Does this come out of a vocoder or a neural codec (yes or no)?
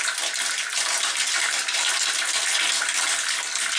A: no